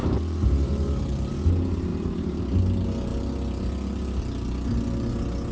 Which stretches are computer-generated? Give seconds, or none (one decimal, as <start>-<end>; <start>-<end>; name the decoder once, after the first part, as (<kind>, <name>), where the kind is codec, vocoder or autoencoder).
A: 0.0-1.3 (vocoder, BigVGAN v2); 1.9-2.4